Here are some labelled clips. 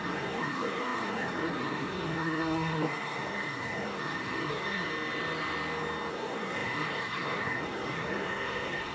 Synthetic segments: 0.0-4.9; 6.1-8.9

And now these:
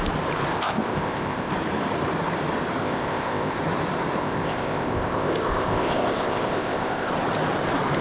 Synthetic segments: 0.5-1.5; 2.8-3.6; 4.2-7.1

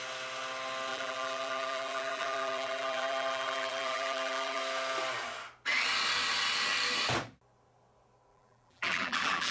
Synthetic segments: 0.9-4.6; 8.3-9.5

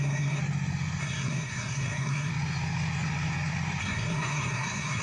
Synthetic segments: 0.0-0.4; 1.0-2.3; 3.8-5.0